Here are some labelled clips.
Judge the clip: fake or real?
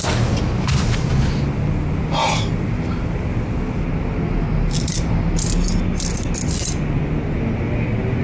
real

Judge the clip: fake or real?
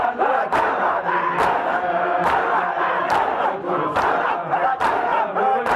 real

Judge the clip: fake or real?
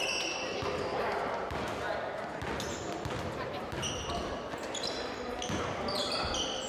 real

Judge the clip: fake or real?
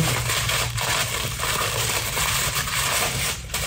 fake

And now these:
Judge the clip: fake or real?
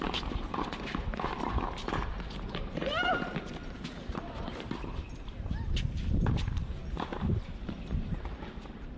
fake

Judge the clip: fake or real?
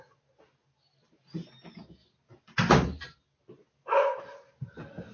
real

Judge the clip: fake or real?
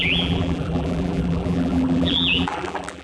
fake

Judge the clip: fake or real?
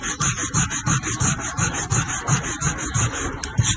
real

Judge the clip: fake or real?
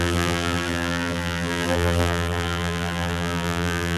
fake